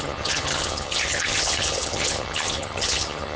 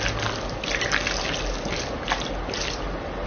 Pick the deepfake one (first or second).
first